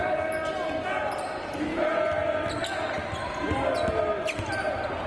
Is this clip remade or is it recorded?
recorded